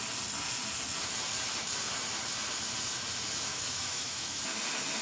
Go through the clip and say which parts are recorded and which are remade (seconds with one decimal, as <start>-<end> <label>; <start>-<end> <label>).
0.0-3.5 recorded; 3.5-4.4 remade; 4.4-5.0 recorded